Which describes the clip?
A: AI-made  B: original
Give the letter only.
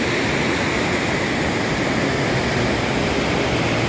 B